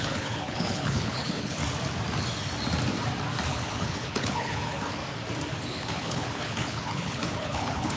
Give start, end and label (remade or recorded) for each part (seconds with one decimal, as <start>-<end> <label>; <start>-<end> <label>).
0.0-1.6 remade; 1.6-3.5 recorded; 3.5-5.0 remade; 5.0-5.6 recorded; 5.6-8.0 remade